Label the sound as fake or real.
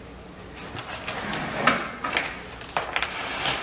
real